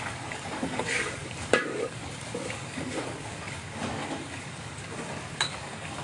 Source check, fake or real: fake